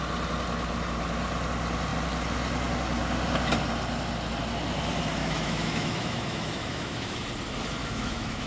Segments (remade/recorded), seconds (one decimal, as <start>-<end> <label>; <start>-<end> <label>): 0.0-5.2 recorded; 5.2-7.3 remade; 7.3-7.8 recorded; 7.8-8.5 remade